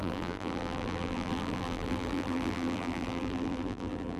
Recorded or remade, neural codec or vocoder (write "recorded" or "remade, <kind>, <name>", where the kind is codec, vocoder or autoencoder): remade, vocoder, BigVGAN v2